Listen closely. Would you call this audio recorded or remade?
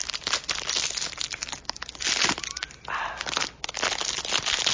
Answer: recorded